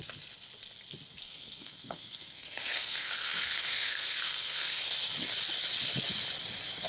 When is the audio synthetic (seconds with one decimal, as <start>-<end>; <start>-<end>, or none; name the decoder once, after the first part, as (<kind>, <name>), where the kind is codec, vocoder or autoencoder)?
1.2-4.8 (codec, SNAC)